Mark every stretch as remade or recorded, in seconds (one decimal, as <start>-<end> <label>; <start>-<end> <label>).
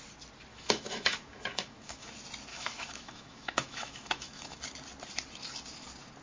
0.0-0.5 recorded; 0.5-2.1 remade; 2.1-2.5 recorded; 2.5-4.6 remade; 4.6-6.2 recorded